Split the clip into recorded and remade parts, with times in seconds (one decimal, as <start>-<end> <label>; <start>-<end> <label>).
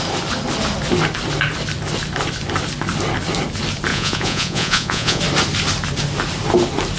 0.0-3.9 recorded; 3.9-5.2 remade; 5.2-7.0 recorded